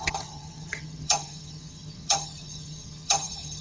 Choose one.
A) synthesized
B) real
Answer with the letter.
A